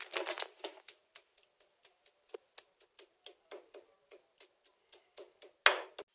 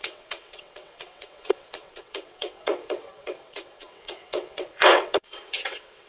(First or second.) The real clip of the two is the first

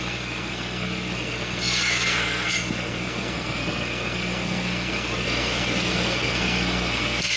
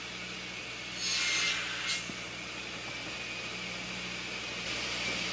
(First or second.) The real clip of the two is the second